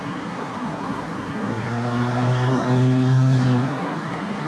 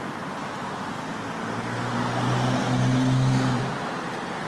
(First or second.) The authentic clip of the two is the second